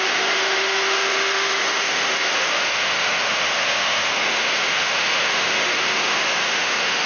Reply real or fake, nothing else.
fake